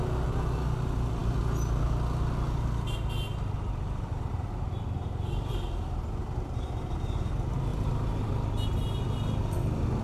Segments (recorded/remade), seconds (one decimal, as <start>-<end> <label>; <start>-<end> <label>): 0.0-7.7 recorded; 7.7-8.3 remade; 8.3-10.0 recorded